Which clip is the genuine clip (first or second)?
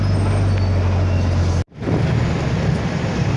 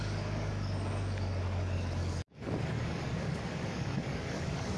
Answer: first